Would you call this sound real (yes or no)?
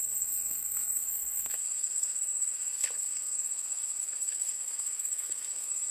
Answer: no